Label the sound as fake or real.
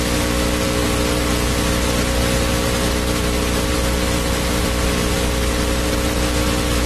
real